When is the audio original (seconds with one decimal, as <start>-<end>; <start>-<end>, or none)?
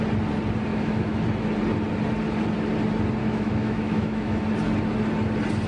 0.0-0.7; 1.2-3.2; 4.4-5.7